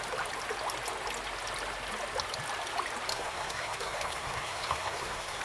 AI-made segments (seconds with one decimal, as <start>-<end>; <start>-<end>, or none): 3.1-5.4